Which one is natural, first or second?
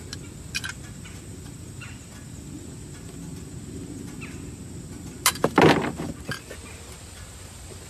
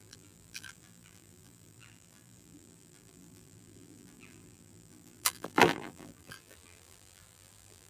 first